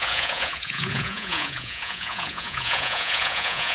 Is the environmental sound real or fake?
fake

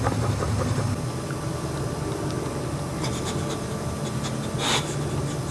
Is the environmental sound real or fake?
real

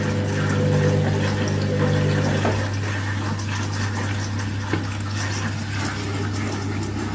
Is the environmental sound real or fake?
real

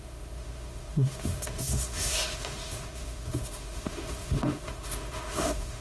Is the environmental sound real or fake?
fake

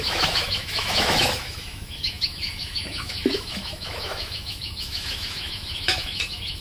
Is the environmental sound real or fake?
fake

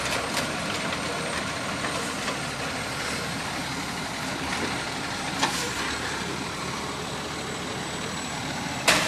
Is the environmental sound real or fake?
fake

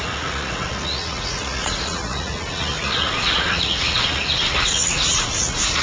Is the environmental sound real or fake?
fake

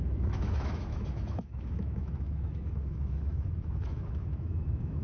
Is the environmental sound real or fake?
fake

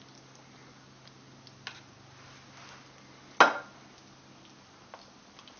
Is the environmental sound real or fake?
real